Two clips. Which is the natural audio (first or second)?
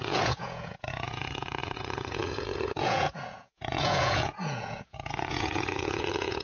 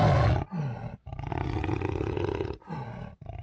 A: second